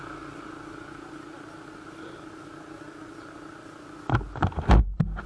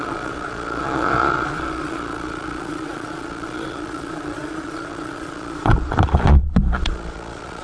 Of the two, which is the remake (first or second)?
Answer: second